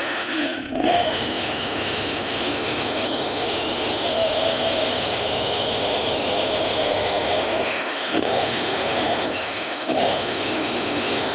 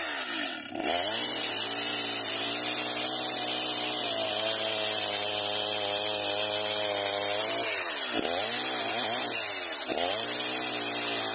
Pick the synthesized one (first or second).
first